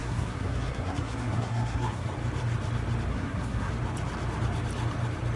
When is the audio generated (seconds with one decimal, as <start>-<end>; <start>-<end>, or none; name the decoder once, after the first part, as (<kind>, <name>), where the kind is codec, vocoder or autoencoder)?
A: 0.0-2.1 (codec, SNAC); 3.1-3.7